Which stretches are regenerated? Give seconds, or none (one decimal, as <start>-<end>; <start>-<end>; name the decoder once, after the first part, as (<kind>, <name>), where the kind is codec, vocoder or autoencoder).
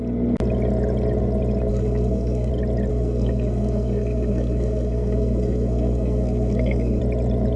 1.7-2.5 (codec, SNAC); 2.9-7.0